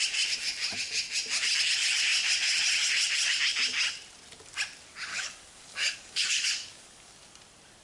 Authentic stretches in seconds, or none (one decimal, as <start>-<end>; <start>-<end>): 0.0-5.1; 7.1-7.8